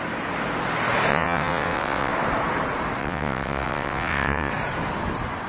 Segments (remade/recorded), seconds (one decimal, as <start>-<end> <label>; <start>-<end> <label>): 0.0-1.1 recorded; 1.1-2.1 remade; 2.1-3.0 recorded; 3.0-4.5 remade; 4.5-5.5 recorded